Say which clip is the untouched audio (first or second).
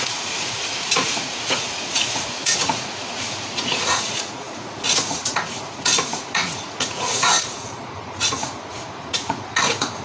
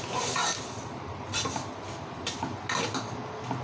second